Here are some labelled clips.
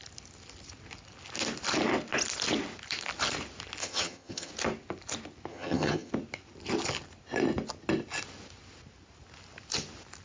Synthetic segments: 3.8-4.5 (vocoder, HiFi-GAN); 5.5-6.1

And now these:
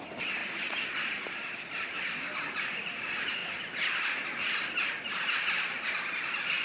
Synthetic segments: none